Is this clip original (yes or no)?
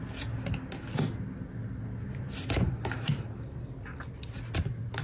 yes